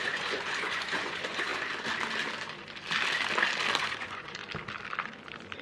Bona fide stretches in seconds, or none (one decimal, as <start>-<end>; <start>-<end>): 1.5-3.8; 4.4-5.6